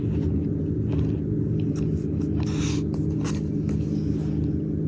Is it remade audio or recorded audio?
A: recorded